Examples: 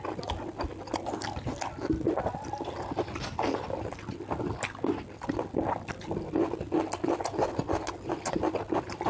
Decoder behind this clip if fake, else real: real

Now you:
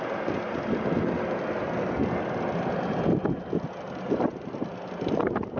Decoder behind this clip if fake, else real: real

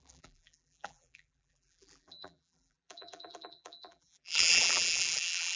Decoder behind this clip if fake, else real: fake, vocoder, BigVGAN v2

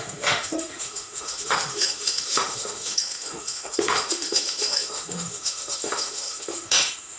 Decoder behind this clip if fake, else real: fake, autoencoder, DAC-VAE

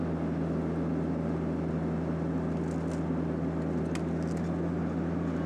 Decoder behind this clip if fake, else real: real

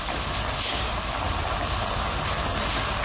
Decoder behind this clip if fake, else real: real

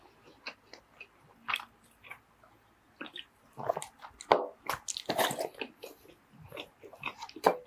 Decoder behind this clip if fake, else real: real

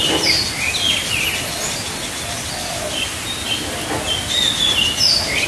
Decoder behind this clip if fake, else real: real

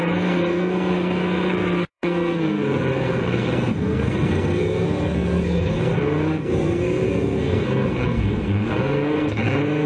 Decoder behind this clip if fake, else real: fake, codec, SNAC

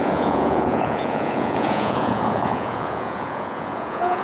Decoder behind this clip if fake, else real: fake, vocoder, Vocos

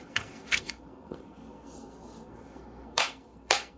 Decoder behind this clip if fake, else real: fake, codec, SNAC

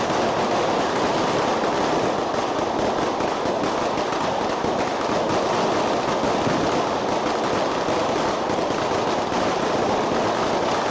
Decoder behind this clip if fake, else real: real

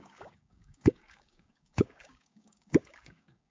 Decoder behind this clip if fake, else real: fake, codec, DAC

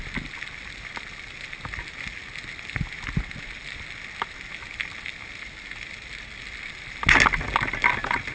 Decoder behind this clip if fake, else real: real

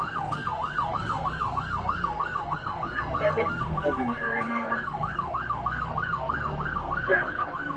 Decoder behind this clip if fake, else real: fake, codec, SNAC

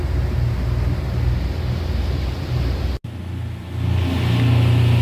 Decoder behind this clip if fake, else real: real